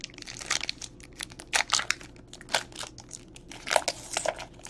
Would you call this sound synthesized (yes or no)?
no